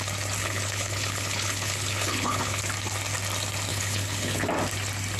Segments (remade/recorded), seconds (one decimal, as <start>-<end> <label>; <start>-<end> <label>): 0.0-0.4 recorded; 0.4-2.6 remade; 2.6-3.7 recorded; 3.7-4.5 remade; 4.5-5.2 recorded